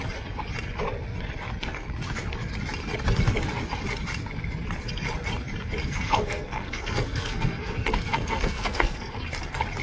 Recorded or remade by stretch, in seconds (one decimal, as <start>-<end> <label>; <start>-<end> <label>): 0.0-5.8 recorded; 5.8-9.1 remade; 9.1-9.8 recorded